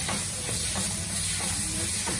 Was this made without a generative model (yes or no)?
yes